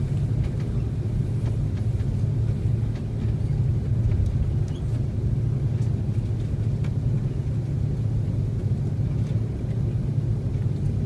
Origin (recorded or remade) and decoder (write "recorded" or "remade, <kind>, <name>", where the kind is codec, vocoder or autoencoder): recorded